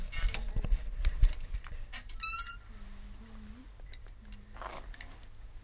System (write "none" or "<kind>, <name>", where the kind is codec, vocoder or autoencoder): none